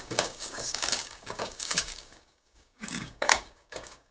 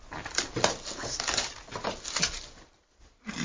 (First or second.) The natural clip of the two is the second